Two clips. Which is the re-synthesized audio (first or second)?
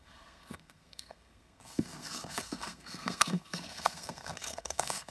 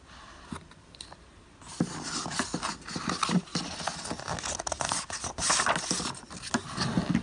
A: first